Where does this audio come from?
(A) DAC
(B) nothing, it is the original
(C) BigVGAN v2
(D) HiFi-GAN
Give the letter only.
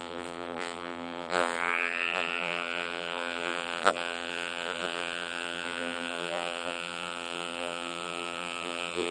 C